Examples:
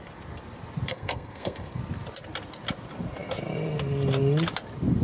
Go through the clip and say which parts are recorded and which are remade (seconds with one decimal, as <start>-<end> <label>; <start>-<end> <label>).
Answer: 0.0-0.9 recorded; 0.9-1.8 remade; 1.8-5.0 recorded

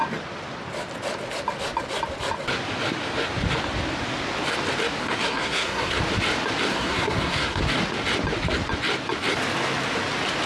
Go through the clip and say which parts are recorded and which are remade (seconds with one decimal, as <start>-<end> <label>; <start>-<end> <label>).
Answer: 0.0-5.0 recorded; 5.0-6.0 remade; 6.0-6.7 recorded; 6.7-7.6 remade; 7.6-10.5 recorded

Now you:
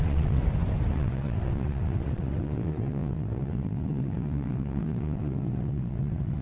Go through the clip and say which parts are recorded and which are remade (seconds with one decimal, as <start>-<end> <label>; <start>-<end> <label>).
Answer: 0.0-0.4 remade; 0.4-0.9 recorded; 0.9-6.4 remade

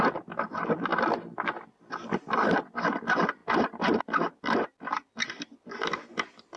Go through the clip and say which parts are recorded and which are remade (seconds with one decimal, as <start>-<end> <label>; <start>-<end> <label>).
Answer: 0.0-0.9 remade; 0.9-1.8 recorded; 1.8-3.4 remade; 3.4-4.0 recorded; 4.0-6.6 remade